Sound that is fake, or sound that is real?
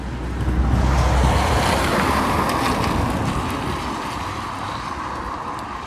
real